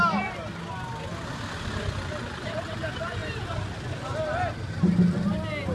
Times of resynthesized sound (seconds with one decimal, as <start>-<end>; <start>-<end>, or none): none